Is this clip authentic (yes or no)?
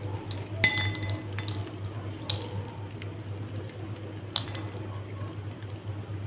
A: yes